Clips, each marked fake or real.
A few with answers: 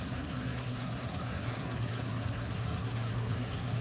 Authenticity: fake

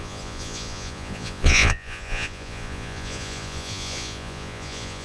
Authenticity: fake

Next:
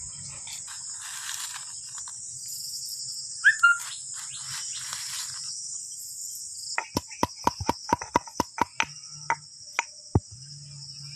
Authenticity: real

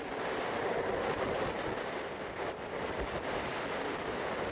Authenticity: real